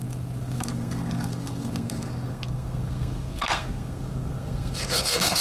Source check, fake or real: fake